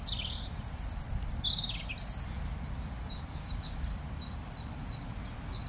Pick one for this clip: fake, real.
real